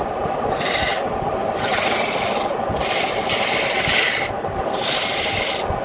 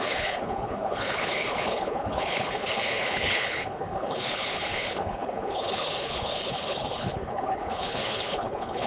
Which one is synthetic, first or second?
second